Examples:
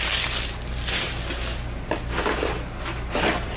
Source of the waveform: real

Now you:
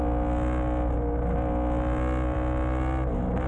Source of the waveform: real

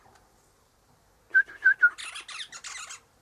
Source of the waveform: real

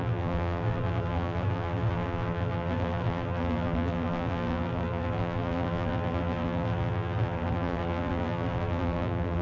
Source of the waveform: fake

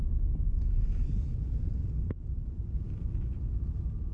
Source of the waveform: real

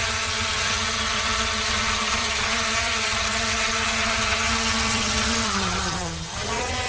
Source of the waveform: fake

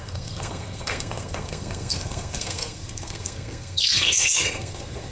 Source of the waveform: fake